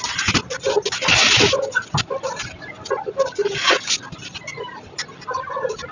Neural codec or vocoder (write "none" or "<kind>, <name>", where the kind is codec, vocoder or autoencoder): none